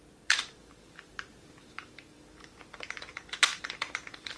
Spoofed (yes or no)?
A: yes